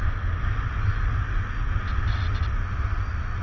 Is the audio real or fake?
real